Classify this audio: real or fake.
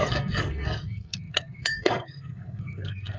fake